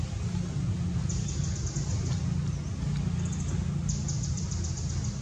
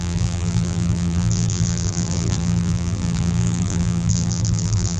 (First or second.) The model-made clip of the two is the second